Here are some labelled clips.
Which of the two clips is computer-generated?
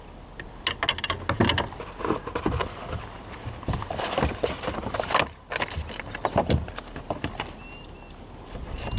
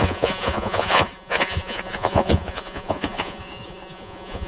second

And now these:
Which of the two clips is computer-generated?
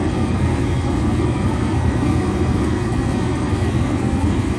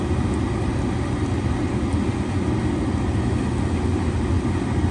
first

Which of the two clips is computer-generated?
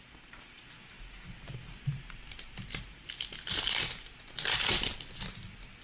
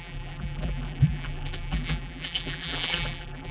second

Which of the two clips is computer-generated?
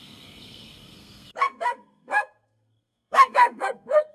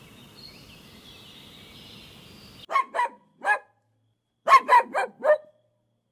first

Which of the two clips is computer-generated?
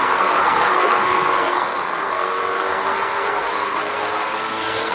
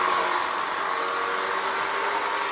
first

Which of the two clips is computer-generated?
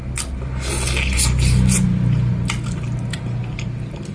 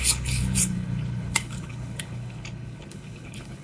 second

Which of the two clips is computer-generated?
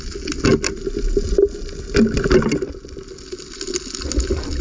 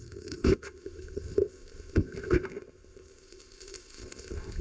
second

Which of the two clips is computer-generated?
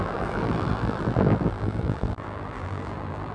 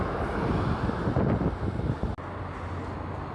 first